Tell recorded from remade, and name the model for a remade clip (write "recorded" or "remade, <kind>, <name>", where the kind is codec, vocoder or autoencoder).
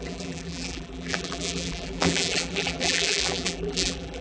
remade, vocoder, BigVGAN v2